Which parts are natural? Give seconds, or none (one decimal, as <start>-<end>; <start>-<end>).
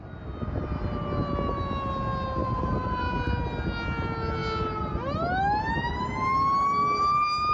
0.0-2.4; 3.0-7.5